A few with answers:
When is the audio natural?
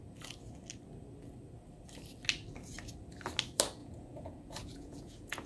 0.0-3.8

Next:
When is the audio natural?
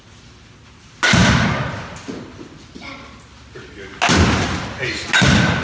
0.0-5.6